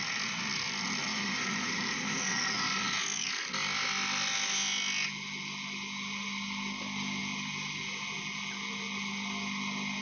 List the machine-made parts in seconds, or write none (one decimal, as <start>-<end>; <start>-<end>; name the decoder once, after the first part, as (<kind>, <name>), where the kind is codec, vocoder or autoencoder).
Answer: 1.1-2.2 (vocoder, BigVGAN v2)